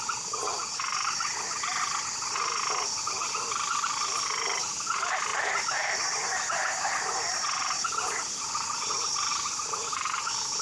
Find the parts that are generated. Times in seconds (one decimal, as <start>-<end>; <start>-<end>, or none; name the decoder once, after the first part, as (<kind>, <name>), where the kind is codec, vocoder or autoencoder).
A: none